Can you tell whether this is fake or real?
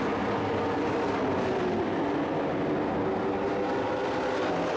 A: real